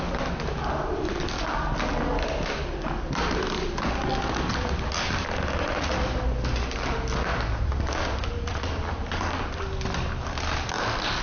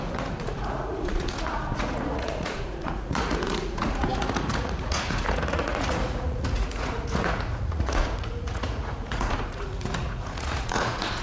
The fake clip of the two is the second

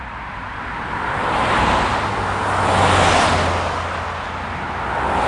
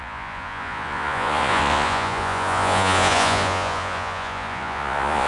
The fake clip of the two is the second